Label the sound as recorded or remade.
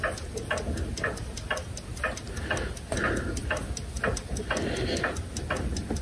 recorded